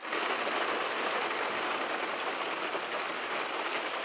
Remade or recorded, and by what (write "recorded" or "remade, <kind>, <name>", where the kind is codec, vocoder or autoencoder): remade, vocoder, BigVGAN v2